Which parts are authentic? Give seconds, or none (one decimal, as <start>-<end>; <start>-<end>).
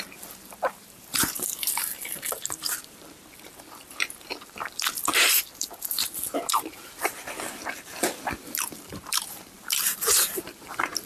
none